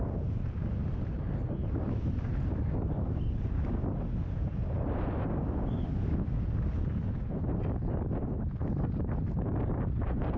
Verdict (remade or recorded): recorded